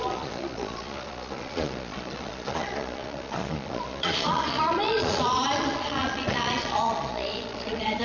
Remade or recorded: remade